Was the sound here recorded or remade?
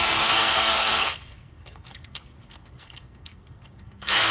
remade